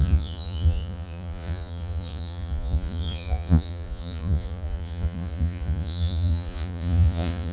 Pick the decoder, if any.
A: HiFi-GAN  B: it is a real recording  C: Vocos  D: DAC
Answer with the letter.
C